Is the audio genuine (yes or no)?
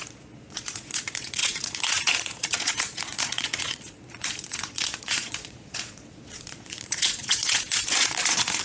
no